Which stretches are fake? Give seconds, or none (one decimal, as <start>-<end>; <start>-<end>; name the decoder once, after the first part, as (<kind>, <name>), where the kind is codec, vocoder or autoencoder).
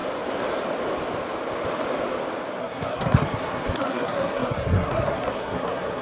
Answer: 2.6-6.0 (codec, SNAC)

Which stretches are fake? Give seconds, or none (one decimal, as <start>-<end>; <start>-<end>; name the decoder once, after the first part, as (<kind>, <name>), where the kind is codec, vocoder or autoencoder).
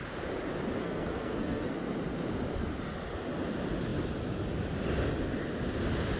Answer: 0.8-1.7 (codec, SNAC)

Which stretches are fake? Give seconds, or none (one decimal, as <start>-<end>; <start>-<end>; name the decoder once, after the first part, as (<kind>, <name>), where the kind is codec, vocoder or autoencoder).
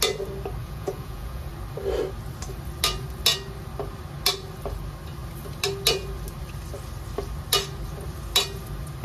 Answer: 0.6-1.5 (vocoder, Vocos)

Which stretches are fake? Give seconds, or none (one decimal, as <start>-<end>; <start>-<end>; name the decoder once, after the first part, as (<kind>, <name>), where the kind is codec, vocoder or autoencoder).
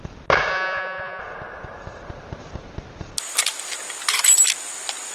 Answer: 0.5-1.2 (vocoder, Vocos)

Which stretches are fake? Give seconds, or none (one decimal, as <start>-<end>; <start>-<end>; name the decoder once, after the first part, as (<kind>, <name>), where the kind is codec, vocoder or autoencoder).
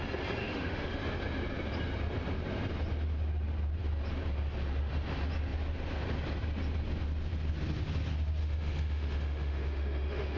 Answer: 0.4-1.0 (autoencoder, DAC-VAE); 8.4-10.4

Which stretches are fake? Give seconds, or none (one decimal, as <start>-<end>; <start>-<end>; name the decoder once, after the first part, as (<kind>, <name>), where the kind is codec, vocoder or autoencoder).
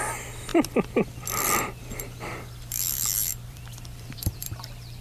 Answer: 0.5-1.5 (vocoder, BigVGAN v2); 3.3-5.0